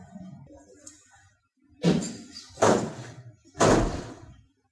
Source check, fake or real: real